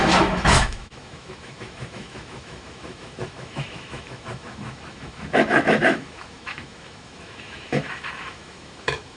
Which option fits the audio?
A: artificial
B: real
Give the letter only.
A